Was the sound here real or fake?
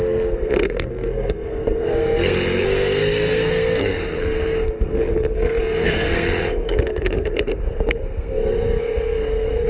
fake